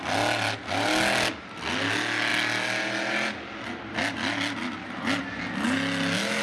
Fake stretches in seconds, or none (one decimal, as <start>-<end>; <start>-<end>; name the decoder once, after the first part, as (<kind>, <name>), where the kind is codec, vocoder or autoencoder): none